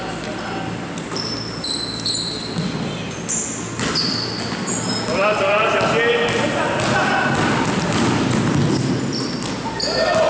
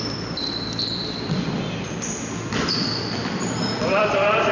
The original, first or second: first